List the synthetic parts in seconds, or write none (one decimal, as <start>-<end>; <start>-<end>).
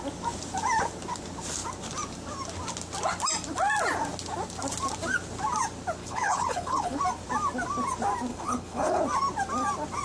6.0-7.0; 8.3-9.0